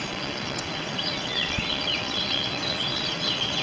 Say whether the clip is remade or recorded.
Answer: remade